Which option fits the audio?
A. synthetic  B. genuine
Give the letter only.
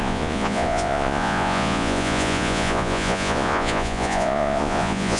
A